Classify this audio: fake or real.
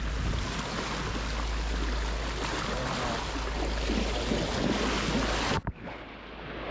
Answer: real